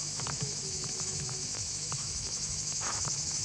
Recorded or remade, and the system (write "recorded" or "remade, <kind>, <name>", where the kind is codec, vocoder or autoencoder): remade, autoencoder, DAC-VAE